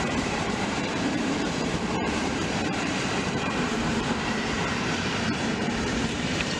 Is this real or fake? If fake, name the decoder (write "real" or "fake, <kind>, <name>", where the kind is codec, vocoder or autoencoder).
fake, vocoder, BigVGAN v2